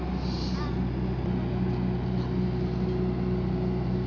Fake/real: real